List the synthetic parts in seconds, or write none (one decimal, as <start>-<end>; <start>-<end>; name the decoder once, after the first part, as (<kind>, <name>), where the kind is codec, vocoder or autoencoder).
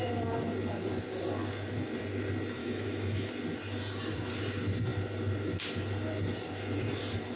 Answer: 2.6-3.3 (autoencoder, DAC-VAE)